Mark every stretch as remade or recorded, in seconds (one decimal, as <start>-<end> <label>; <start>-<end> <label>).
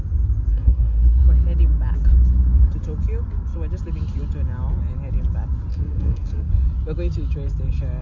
0.0-0.5 recorded; 0.5-1.2 remade; 1.2-5.7 recorded; 5.7-6.5 remade; 6.5-8.0 recorded